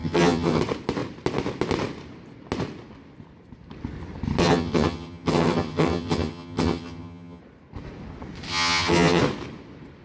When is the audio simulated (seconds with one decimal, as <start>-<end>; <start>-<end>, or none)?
0.0-0.6; 4.4-7.4; 8.5-9.2